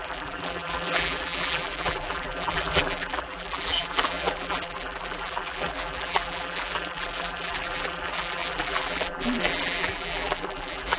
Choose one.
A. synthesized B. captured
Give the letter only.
A